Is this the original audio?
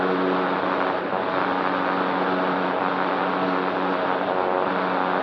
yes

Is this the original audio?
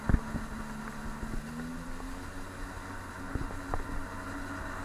yes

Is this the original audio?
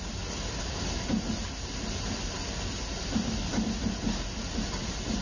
yes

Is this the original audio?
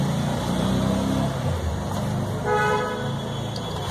yes